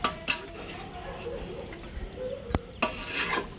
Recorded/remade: recorded